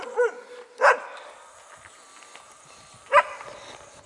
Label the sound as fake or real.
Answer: real